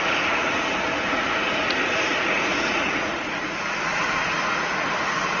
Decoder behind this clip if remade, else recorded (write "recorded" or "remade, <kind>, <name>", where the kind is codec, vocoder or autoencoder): remade, vocoder, Vocos